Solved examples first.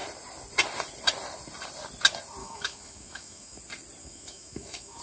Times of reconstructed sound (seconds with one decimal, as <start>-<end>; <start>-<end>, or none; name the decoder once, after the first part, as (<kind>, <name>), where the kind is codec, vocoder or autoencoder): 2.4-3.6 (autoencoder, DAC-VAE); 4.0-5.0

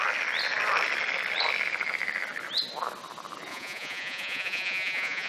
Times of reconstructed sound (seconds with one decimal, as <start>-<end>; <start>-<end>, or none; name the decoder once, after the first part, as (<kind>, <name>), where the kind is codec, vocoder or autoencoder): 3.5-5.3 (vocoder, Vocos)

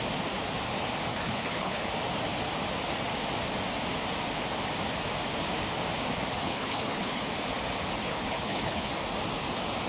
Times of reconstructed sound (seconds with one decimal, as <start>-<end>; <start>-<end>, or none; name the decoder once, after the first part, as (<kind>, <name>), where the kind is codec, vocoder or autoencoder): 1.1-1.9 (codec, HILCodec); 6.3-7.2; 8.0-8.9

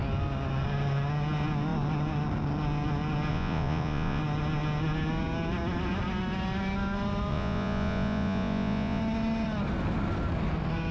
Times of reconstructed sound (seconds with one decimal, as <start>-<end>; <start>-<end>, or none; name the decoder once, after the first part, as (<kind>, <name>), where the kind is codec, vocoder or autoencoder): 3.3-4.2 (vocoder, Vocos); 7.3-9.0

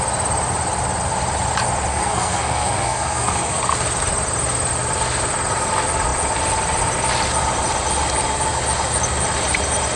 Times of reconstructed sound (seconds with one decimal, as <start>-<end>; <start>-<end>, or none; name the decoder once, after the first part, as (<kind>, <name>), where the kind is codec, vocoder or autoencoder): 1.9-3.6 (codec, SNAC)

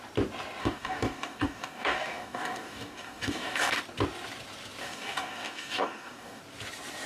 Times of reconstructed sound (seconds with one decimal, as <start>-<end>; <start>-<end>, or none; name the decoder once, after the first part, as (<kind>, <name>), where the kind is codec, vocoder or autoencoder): 0.6-3.8 (codec, DAC); 4.8-6.4

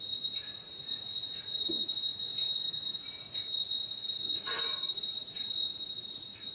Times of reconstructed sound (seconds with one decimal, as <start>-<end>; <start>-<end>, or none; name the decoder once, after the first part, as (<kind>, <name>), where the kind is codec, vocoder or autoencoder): 0.0-6.5 (vocoder, Vocos)